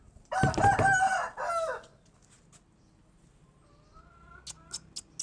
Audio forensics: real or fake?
real